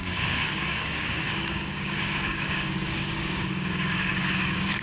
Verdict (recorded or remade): remade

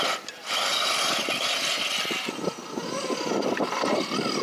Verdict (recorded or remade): recorded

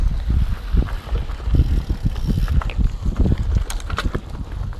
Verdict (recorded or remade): recorded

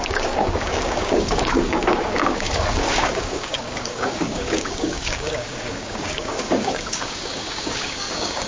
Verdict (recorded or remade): remade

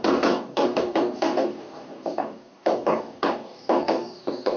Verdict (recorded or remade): remade